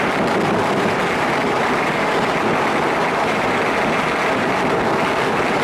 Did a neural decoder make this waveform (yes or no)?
no